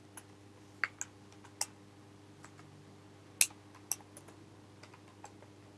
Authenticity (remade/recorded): recorded